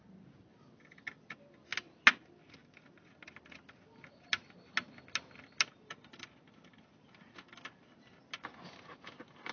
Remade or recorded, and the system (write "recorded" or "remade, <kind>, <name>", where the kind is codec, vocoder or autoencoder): recorded